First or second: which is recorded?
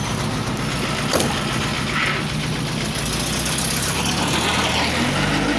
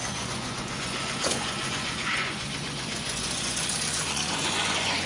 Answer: first